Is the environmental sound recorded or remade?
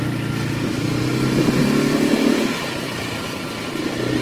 recorded